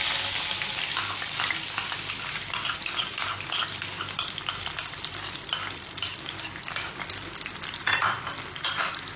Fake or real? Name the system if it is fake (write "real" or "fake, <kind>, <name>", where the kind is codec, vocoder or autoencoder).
real